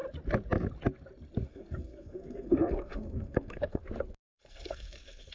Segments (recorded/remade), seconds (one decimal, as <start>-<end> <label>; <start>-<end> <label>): 0.0-1.5 recorded; 1.5-3.8 remade; 3.8-4.3 recorded; 4.3-5.3 remade